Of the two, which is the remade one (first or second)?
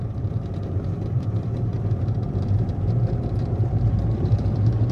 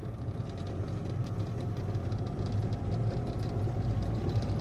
first